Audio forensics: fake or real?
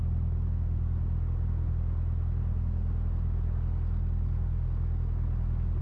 real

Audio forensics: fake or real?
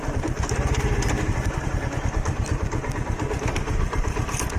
real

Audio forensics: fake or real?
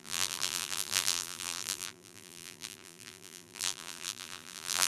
fake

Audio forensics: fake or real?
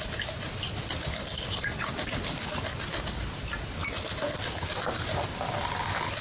real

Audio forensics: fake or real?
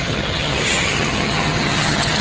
fake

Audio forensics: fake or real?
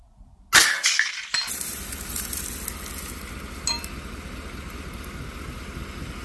real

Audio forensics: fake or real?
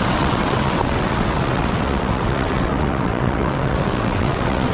fake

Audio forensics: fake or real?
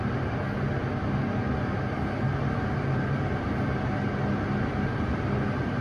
real